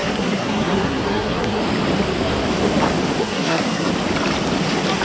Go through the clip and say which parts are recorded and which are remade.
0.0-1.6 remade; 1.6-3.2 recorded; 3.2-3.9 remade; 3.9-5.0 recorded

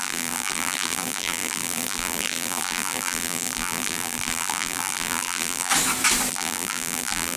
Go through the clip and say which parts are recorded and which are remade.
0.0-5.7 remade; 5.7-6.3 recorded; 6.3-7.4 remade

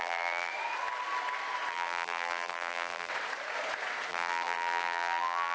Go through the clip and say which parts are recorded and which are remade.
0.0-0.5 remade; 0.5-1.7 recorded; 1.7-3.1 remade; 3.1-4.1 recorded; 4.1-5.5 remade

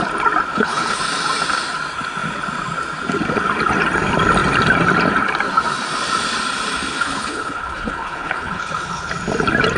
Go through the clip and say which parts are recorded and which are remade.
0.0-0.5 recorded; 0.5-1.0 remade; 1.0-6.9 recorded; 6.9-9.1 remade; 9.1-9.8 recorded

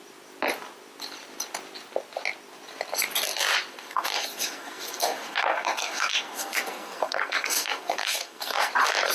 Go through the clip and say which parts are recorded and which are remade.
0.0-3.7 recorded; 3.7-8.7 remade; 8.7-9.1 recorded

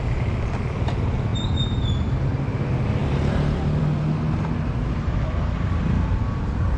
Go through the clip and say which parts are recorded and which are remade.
0.0-1.3 recorded; 1.3-2.4 remade; 2.4-6.8 recorded

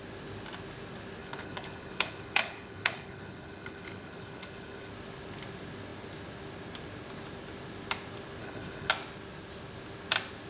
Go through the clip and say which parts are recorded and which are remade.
0.0-1.2 recorded; 1.2-4.9 remade; 4.9-8.4 recorded; 8.4-8.9 remade; 8.9-10.5 recorded